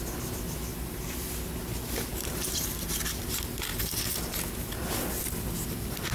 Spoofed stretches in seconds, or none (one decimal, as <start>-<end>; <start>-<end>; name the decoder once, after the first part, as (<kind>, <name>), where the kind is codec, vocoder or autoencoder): 0.7-1.5 (vocoder, BigVGAN v2); 2.1-2.8